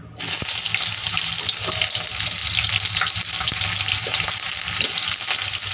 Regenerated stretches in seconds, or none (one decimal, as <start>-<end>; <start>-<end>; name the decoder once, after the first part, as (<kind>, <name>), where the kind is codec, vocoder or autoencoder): none